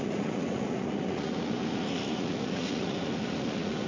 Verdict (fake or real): fake